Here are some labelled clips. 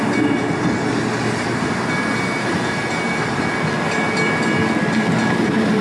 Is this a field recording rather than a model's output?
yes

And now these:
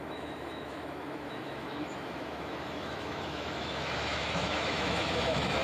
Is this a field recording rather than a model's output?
no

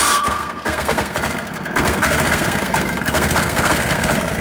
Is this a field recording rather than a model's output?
no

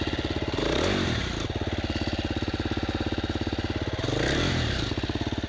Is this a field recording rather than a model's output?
yes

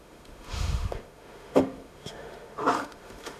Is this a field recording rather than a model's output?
no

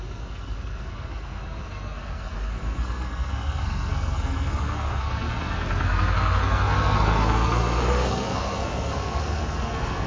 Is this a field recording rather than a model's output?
no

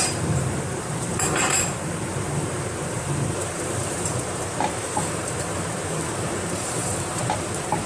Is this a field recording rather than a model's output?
no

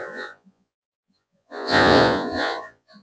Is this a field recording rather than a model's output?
no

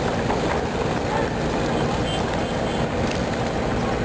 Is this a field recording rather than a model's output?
yes